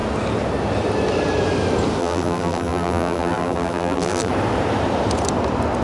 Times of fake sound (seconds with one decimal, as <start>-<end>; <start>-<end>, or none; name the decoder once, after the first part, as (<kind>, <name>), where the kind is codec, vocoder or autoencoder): 2.0-4.3 (vocoder, BigVGAN v2)